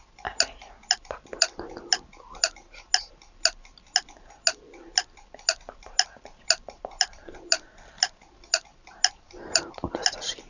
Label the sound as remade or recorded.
recorded